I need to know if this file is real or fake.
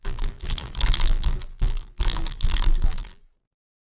fake